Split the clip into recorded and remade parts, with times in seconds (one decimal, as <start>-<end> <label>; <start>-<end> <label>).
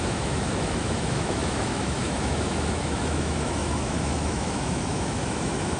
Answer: 0.0-5.8 remade